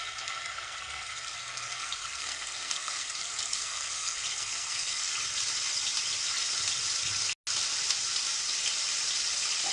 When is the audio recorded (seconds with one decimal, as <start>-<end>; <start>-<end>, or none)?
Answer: 5.1-9.7